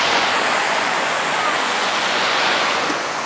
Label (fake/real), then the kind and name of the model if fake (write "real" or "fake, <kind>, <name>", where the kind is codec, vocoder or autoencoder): fake, vocoder, Vocos